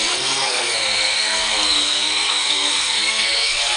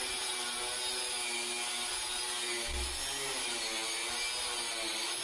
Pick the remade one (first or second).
first